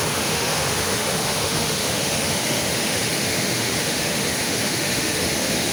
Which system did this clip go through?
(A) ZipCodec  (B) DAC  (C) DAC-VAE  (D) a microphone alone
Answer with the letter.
C